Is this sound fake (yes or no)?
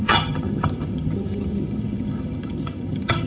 yes